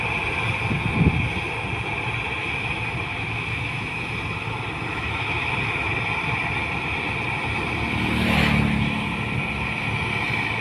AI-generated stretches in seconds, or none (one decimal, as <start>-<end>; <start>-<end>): 2.4-3.9; 4.9-5.9